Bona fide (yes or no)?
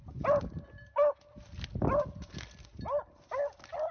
yes